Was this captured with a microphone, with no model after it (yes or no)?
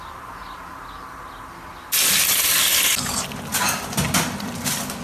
yes